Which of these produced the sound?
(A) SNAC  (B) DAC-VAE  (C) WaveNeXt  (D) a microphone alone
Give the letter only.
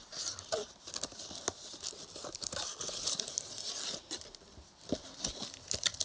D